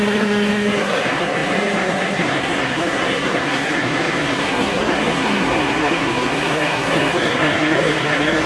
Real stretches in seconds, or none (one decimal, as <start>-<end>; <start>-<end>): none